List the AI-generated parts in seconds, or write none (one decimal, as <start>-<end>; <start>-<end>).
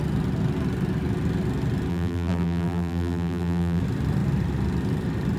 1.9-3.8